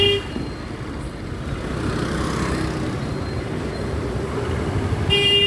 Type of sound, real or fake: real